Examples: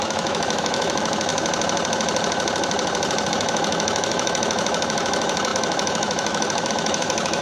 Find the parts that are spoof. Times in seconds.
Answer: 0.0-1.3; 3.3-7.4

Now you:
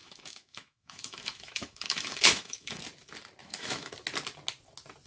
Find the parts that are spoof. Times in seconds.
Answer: 0.0-2.8; 3.4-3.9

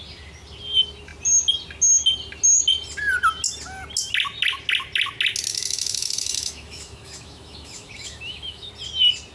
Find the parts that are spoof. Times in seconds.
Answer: 5.5-8.7

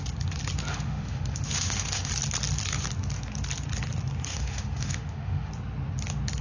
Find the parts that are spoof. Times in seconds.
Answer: 0.7-2.1; 4.3-5.5

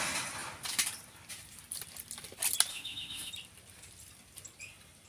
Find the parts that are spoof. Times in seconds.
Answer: 2.7-3.3